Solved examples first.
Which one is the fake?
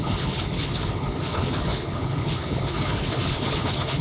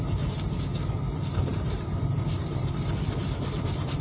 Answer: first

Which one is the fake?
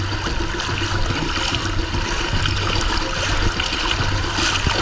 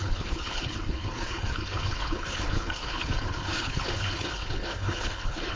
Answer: second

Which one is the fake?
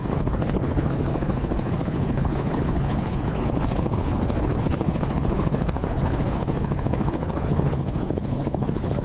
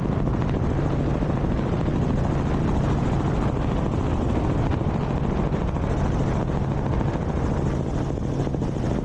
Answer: first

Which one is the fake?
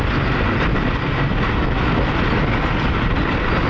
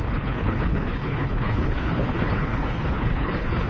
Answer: second